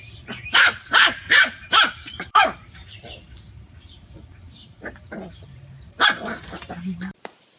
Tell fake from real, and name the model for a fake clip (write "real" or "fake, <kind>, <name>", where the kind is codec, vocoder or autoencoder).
fake, vocoder, BigVGAN v2